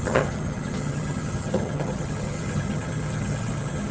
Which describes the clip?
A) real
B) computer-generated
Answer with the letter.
B